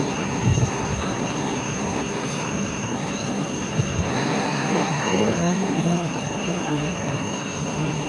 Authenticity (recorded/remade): remade